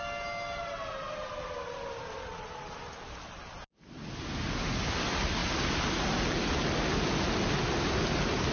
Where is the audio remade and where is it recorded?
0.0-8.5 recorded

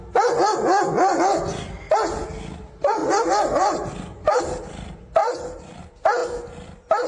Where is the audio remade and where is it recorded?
0.0-7.1 recorded